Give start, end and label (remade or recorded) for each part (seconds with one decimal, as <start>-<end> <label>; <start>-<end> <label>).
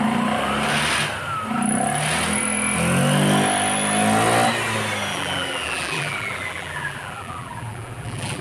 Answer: 0.0-5.1 recorded; 5.1-8.4 remade